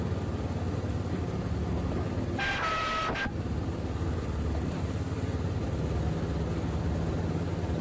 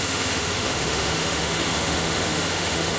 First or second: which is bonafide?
first